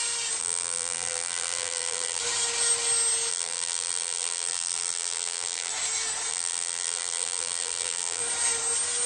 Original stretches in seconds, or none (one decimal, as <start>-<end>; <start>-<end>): 0.0-0.4; 2.2-3.3; 5.7-6.3; 8.2-9.1

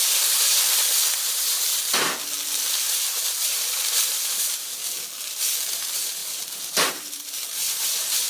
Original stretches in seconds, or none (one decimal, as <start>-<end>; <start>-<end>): 1.7-2.6; 4.8-5.7

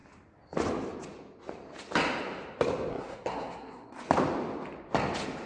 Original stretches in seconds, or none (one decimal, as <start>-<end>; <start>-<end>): 0.0-2.9; 3.9-5.5

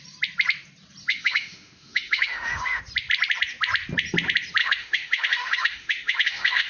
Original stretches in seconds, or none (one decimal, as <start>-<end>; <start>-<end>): 0.0-1.1; 2.8-4.6